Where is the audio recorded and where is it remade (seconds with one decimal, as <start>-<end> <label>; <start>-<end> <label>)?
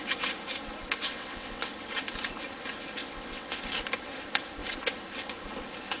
0.0-1.1 recorded; 1.1-1.7 remade; 1.7-3.0 recorded; 3.0-3.6 remade; 3.6-6.0 recorded